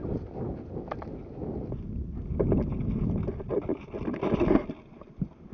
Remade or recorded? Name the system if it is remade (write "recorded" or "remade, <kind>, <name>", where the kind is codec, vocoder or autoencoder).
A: recorded